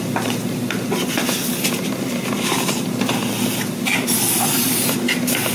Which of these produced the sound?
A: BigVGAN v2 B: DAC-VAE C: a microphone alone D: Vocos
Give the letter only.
C